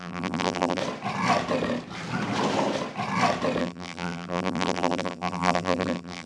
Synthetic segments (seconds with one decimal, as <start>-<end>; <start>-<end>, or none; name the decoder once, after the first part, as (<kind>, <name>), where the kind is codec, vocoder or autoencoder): 0.0-0.8 (vocoder, BigVGAN v2); 3.6-6.3